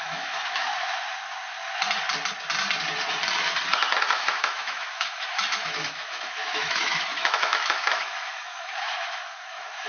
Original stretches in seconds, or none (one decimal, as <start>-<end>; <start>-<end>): 0.7-4.0